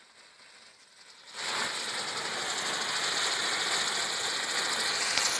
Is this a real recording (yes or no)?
yes